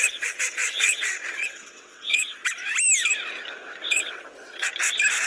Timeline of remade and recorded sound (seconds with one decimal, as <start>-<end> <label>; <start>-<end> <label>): 0.0-2.6 remade; 2.6-3.9 recorded; 3.9-4.7 remade; 4.7-5.3 recorded